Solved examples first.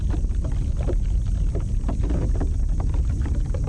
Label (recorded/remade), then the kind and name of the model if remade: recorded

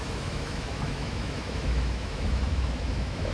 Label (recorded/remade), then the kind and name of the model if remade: remade, autoencoder, DAC-VAE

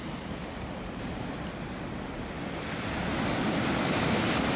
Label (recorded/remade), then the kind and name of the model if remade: recorded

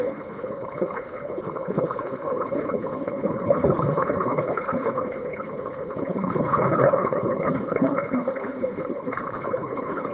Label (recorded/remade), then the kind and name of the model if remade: remade, codec, HILCodec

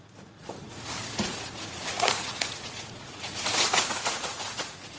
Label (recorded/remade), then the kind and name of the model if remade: remade, vocoder, Vocos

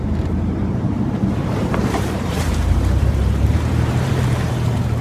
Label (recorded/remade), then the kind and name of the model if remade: remade, vocoder, BigVGAN v2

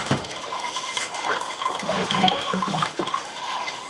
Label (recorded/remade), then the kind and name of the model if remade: remade, autoencoder, DAC-VAE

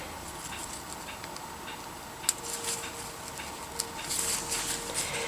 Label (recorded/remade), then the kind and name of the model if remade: recorded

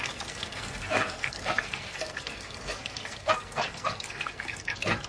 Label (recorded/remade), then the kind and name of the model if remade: remade, codec, SNAC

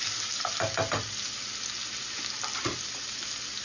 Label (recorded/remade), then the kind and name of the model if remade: recorded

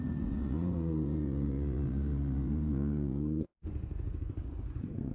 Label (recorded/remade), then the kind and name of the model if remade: remade, vocoder, Vocos